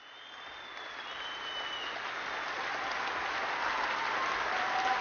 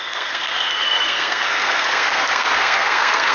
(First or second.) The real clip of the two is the first